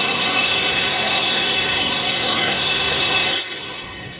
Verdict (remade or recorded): remade